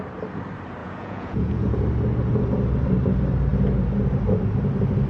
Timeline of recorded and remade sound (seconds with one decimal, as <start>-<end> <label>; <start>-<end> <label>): 0.0-0.8 recorded; 0.8-1.8 remade; 1.8-5.1 recorded